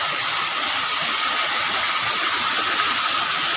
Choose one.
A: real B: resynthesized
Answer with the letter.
A